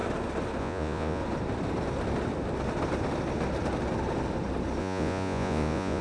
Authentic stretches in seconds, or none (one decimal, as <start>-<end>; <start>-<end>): 0.0-0.6; 1.2-4.8